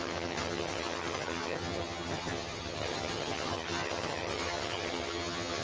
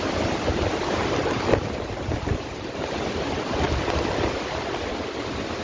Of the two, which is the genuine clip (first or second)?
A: second